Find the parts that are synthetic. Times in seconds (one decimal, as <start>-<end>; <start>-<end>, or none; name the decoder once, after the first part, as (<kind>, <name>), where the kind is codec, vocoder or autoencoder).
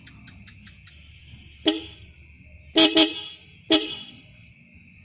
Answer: 3.8-4.5 (vocoder, WaveNeXt)